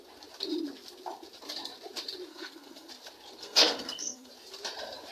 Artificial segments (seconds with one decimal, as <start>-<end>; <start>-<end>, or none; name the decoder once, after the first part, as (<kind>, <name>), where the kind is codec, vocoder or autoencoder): 2.3-2.9 (codec, SNAC); 3.4-4.3